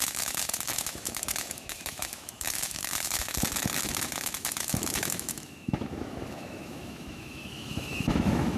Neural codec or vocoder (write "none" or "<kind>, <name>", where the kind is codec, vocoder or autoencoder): autoencoder, DAC-VAE